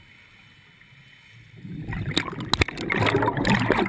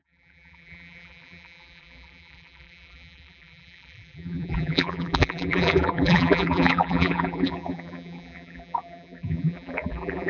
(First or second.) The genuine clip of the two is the first